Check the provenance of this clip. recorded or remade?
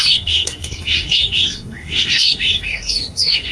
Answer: remade